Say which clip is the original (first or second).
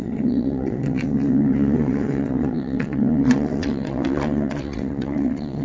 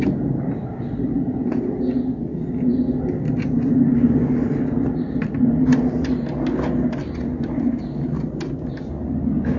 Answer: second